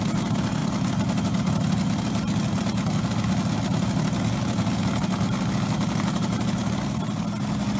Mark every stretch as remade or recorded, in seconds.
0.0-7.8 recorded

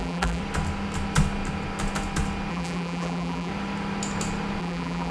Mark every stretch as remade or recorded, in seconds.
0.0-0.4 remade; 0.4-2.5 recorded; 2.5-3.5 remade; 3.5-4.6 recorded; 4.6-5.1 remade

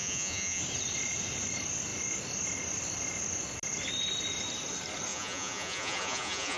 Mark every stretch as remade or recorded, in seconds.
0.0-0.6 remade; 0.6-5.1 recorded; 5.1-6.6 remade

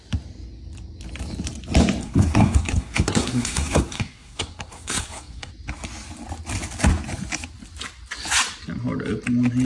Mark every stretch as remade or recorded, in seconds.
0.0-2.0 recorded; 2.0-5.5 remade; 5.5-9.6 recorded

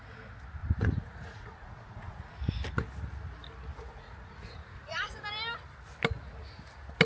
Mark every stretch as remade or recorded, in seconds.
0.0-0.6 recorded; 0.6-2.3 remade; 2.3-3.7 recorded; 3.7-5.2 remade; 5.2-7.0 recorded

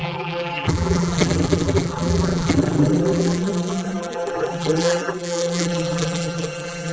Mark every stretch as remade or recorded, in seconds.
0.0-6.9 remade

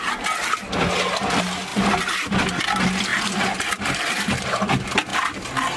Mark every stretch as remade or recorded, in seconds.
0.0-1.7 recorded; 1.7-2.6 remade; 2.6-3.1 recorded; 3.1-4.3 remade; 4.3-5.8 recorded